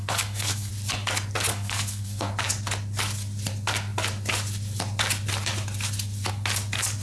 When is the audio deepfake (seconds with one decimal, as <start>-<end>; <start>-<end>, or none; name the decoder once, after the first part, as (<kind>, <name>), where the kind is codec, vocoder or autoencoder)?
0.0-0.7 (codec, SNAC); 1.5-2.3